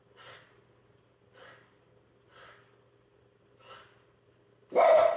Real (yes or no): yes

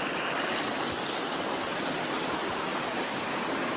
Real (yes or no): yes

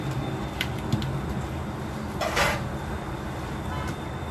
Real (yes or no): yes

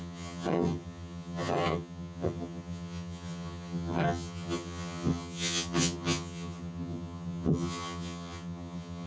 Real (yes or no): no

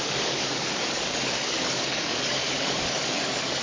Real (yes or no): no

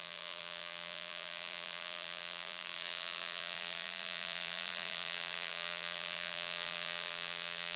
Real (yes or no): no